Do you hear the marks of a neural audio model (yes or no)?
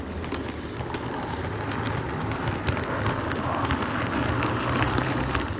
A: no